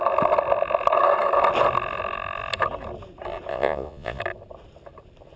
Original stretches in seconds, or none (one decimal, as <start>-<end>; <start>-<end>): 0.0-3.5; 4.2-5.4

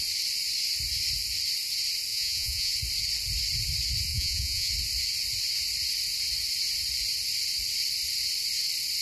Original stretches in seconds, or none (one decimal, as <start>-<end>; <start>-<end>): 0.0-2.1; 2.7-4.1; 4.7-9.0

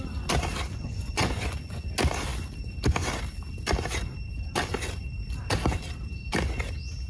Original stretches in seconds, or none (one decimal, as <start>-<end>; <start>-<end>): 0.0-0.7; 1.9-7.1